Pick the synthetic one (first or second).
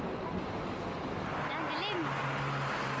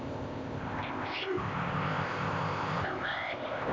second